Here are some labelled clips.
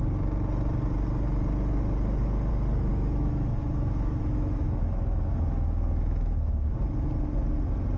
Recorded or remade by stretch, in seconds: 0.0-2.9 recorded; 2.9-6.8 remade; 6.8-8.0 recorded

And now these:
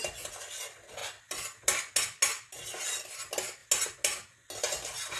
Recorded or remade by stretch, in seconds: 0.0-5.2 recorded

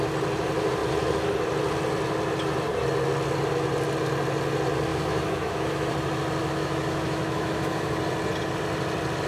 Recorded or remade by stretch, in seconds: 0.0-4.9 recorded; 4.9-5.9 remade; 5.9-6.4 recorded; 6.4-8.0 remade; 8.0-9.3 recorded

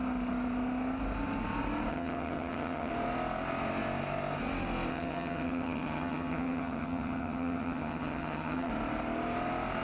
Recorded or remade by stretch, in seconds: 0.0-1.9 recorded; 1.9-2.9 remade; 2.9-4.9 recorded; 4.9-8.7 remade; 8.7-9.8 recorded

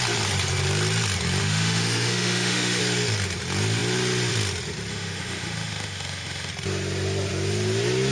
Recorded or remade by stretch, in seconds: 0.0-1.4 recorded; 1.4-2.8 remade; 2.8-4.9 recorded; 4.9-6.5 remade; 6.5-8.1 recorded

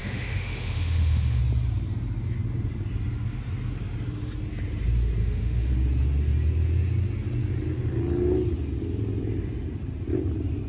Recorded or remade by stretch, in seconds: 0.0-1.4 remade; 1.4-5.2 recorded; 5.2-5.7 remade; 5.7-10.7 recorded